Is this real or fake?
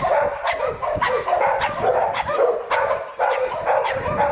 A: real